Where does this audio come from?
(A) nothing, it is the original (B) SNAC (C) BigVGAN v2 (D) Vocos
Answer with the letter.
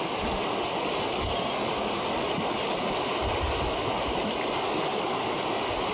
A